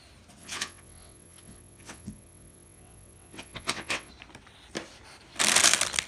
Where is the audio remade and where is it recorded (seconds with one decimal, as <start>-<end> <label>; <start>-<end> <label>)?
0.0-0.4 recorded; 0.4-4.1 remade; 4.1-6.1 recorded